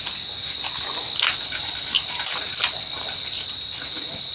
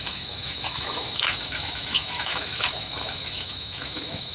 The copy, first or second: second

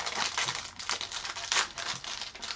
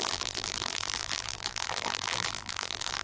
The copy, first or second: second